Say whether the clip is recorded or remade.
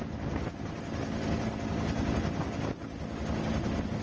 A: recorded